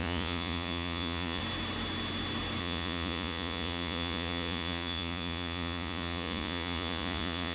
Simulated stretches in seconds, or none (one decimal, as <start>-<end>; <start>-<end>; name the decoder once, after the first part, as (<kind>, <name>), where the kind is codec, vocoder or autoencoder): 0.0-1.4 (vocoder, Vocos); 2.6-7.5